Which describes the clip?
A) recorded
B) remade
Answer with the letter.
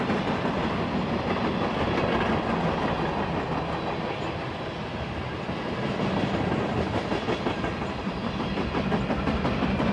A